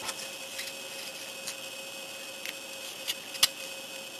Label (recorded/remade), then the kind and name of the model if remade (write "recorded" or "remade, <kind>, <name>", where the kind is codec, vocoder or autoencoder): recorded